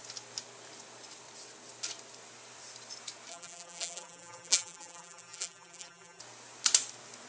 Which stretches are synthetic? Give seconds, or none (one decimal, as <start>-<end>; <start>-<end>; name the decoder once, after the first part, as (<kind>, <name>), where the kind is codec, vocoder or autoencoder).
3.3-6.2 (vocoder, BigVGAN v2)